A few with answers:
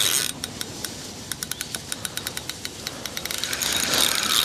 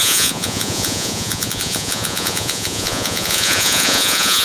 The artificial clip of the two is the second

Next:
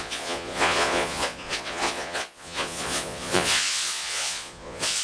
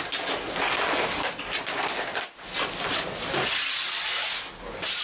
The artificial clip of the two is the first